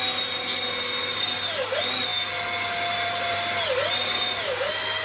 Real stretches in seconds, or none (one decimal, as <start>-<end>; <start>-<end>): 0.0-5.0